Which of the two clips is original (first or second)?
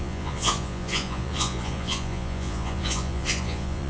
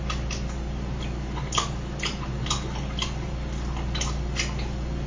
second